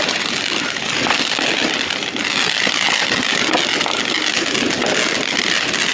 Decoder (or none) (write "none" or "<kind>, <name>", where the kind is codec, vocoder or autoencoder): none